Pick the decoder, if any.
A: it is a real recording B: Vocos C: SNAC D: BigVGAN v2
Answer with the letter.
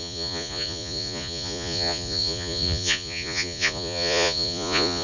B